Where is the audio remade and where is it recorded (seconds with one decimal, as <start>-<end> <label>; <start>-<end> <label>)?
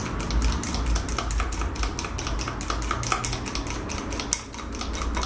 0.0-5.3 recorded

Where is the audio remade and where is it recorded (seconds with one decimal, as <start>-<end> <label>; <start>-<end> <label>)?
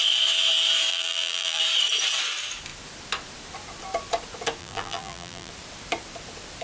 0.0-0.9 recorded; 0.9-1.6 remade; 1.6-4.6 recorded; 4.6-5.5 remade; 5.5-6.6 recorded